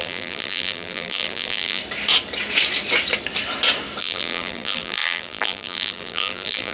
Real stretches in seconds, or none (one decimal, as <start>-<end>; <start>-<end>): 1.8-4.0